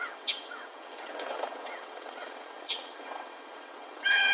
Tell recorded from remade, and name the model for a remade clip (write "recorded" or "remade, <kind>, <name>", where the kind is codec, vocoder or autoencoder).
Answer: remade, vocoder, WaveNeXt